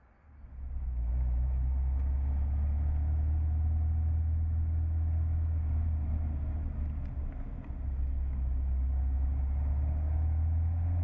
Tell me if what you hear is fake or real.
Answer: real